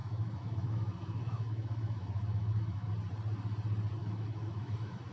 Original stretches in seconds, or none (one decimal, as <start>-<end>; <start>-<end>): 2.9-4.0